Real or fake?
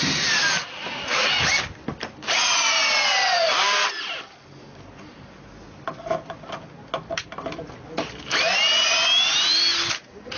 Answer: real